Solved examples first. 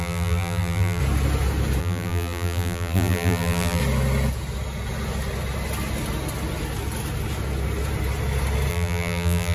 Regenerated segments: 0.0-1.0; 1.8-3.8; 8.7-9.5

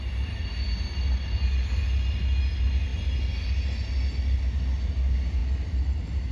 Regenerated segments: none

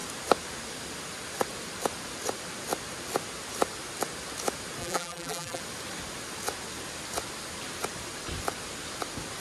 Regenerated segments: 4.8-5.6

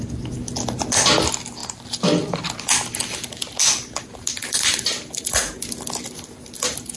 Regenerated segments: none

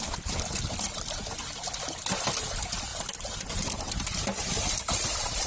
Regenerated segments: none

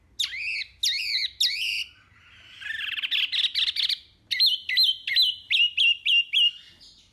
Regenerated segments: none